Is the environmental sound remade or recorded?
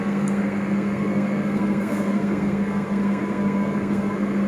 remade